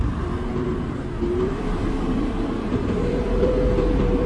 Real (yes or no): no